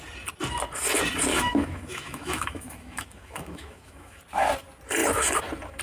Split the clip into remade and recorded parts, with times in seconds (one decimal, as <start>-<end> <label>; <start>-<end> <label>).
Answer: 0.0-1.3 recorded; 1.3-4.2 remade; 4.2-5.8 recorded